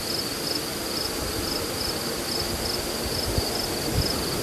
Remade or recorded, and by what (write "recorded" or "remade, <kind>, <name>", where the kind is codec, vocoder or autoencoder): recorded